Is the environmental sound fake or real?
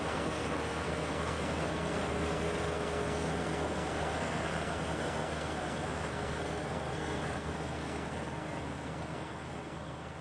fake